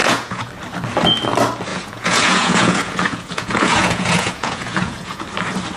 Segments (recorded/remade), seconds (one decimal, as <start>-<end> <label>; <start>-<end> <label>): 0.0-0.5 remade; 0.5-1.7 recorded; 1.7-5.2 remade; 5.2-5.8 recorded